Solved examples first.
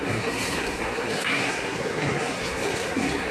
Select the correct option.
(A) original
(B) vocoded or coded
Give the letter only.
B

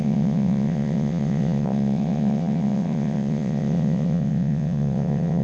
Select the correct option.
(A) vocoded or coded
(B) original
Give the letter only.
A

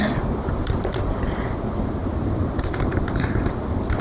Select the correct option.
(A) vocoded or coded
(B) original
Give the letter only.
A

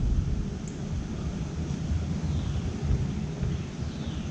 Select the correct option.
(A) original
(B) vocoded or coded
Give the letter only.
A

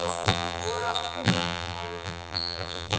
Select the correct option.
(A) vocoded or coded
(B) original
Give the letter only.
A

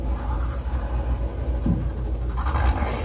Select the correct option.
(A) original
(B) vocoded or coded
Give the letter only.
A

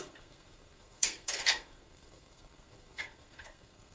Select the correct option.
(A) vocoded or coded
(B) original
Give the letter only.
A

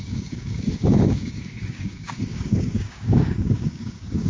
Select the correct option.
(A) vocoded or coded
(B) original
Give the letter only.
A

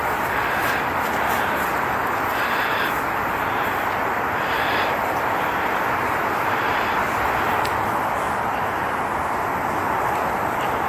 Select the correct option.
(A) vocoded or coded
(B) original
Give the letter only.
A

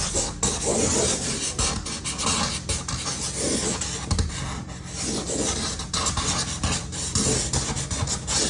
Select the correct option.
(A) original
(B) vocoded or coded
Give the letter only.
A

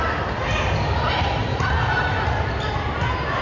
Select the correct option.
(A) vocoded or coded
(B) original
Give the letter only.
B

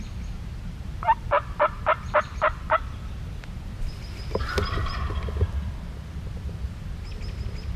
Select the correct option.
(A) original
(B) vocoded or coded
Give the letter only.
A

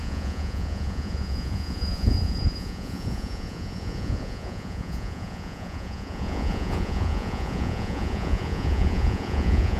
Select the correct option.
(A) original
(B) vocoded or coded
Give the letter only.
B